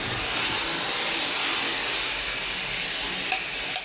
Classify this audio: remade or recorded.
recorded